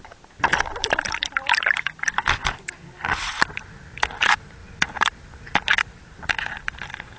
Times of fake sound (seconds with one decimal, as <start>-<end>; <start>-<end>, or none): none